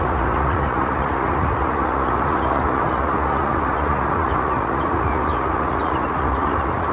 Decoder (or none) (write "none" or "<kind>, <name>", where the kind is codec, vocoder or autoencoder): vocoder, Vocos